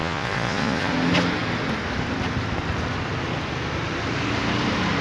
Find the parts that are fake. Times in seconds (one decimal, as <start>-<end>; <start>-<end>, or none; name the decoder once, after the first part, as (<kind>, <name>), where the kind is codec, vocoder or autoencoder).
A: 0.0-0.9 (vocoder, Vocos)